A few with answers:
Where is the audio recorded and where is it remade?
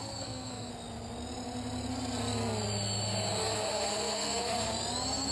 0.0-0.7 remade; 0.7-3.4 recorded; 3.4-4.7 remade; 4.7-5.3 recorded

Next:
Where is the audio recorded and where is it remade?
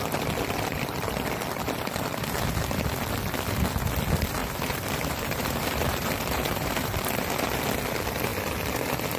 0.0-4.4 recorded; 4.4-7.1 remade; 7.1-9.2 recorded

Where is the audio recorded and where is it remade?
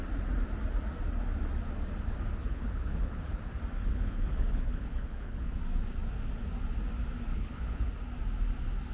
0.0-2.4 recorded; 2.4-3.5 remade; 3.5-3.9 recorded; 3.9-5.5 remade; 5.5-7.3 recorded; 7.3-7.9 remade; 7.9-8.9 recorded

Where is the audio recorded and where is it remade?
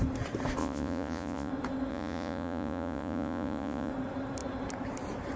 0.0-0.6 recorded; 0.6-1.5 remade; 1.5-1.9 recorded; 1.9-3.9 remade; 3.9-5.4 recorded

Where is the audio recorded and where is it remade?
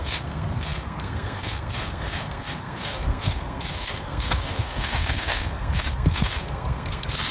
0.0-7.3 remade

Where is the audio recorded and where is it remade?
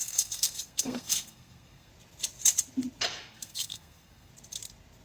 0.0-1.9 remade; 1.9-3.3 recorded; 3.3-4.3 remade; 4.3-5.0 recorded